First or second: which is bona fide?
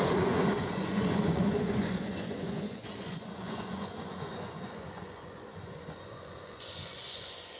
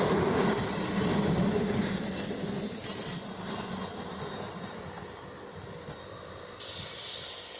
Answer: second